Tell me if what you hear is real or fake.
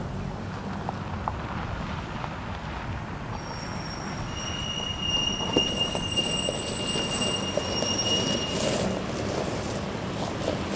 real